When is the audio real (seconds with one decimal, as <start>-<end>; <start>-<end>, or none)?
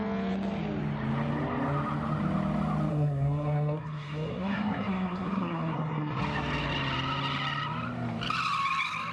0.0-2.9; 6.2-9.1